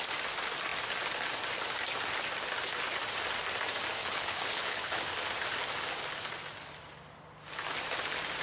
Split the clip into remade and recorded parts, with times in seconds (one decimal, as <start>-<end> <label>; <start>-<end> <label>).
0.0-4.0 recorded; 4.0-5.0 remade; 5.0-8.4 recorded